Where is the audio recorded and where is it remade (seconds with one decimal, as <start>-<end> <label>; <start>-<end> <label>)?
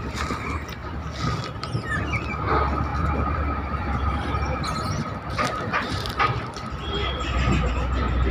0.0-2.9 recorded; 2.9-7.7 remade; 7.7-8.3 recorded